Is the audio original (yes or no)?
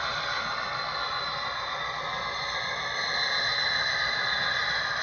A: yes